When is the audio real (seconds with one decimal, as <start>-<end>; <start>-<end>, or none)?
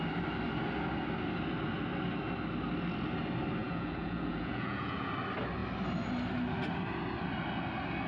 0.0-3.6; 5.1-8.1